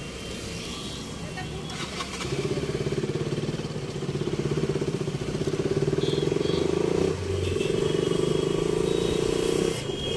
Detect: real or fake real